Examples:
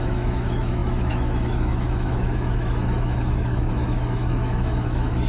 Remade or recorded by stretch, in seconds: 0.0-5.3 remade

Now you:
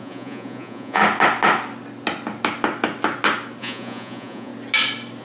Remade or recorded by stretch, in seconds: 0.0-1.0 remade; 1.0-3.6 recorded; 3.6-4.5 remade; 4.5-5.2 recorded

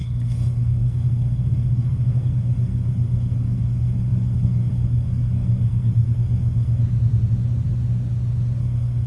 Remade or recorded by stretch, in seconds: 0.0-6.8 remade; 6.8-8.6 recorded; 8.6-9.1 remade

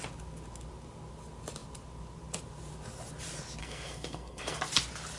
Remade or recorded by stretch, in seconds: 0.0-3.6 recorded; 3.6-4.6 remade; 4.6-5.2 recorded

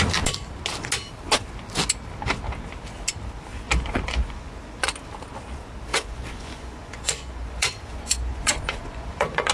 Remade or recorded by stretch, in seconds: 0.0-3.5 recorded; 3.5-4.9 remade; 4.9-5.9 recorded; 5.9-9.5 remade